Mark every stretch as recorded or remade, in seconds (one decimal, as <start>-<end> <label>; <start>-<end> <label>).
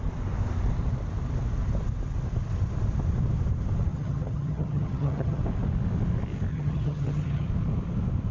0.0-3.9 recorded; 3.9-5.4 remade; 5.4-6.5 recorded; 6.5-7.5 remade; 7.5-8.3 recorded